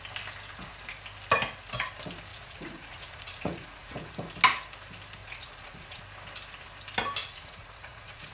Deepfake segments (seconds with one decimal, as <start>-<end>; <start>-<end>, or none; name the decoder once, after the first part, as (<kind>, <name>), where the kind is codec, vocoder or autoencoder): 2.3-4.3 (vocoder, Vocos); 5.2-6.0; 7.2-8.3